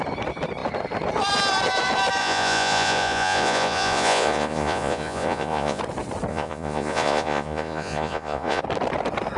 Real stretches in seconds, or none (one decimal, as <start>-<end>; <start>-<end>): 0.0-2.2; 5.8-6.3; 8.6-9.4